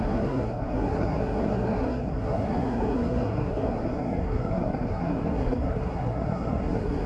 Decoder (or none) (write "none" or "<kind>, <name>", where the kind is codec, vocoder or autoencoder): codec, SNAC